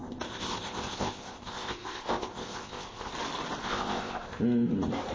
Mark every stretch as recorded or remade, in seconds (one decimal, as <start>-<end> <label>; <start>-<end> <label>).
0.0-3.1 remade; 3.1-3.6 recorded; 3.6-4.4 remade; 4.4-5.1 recorded

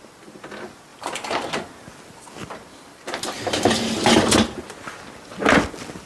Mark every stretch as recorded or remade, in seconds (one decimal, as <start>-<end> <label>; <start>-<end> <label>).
0.0-6.1 recorded

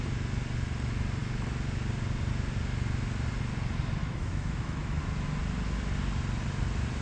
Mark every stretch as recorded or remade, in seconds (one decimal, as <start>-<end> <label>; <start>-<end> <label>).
0.0-4.0 recorded; 4.0-5.0 remade; 5.0-7.0 recorded

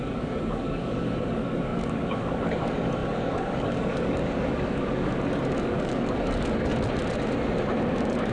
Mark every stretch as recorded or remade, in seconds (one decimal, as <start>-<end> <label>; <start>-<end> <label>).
0.0-6.7 remade; 6.7-7.8 recorded; 7.8-8.3 remade